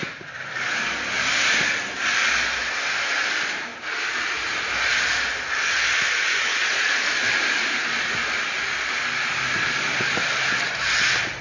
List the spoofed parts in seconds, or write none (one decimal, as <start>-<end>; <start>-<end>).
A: 6.5-7.0